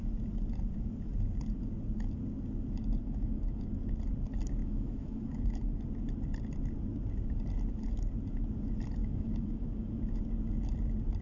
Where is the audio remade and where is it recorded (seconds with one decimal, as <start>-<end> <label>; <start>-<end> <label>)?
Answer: 0.0-3.0 recorded; 3.0-3.9 remade; 3.9-4.6 recorded; 4.6-5.8 remade; 5.8-9.0 recorded; 9.0-10.2 remade; 10.2-11.2 recorded